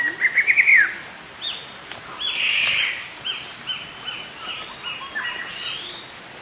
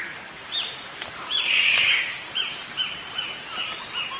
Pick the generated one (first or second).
second